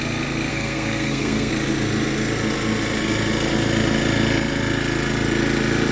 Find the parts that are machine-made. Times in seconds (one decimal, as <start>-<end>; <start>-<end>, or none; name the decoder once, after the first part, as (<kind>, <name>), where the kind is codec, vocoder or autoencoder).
0.5-1.5 (codec, SNAC)